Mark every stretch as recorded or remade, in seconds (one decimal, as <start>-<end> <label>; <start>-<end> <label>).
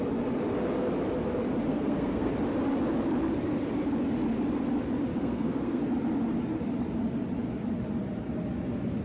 0.0-1.7 recorded; 1.7-2.3 remade; 2.3-5.2 recorded; 5.2-5.8 remade; 5.8-9.0 recorded